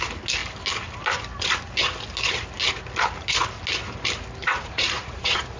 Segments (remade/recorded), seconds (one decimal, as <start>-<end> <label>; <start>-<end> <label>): 0.0-4.4 recorded; 4.4-5.6 remade